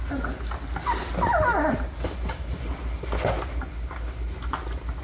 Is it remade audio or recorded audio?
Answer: recorded